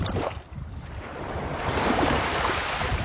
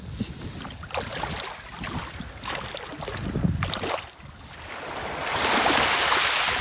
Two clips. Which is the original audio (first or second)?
second